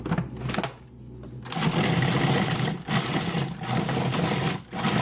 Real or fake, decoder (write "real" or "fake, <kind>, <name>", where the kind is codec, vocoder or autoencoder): real